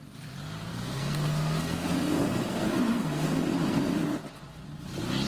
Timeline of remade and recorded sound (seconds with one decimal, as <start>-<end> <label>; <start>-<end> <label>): 0.0-0.7 recorded; 0.7-3.9 remade; 3.9-5.3 recorded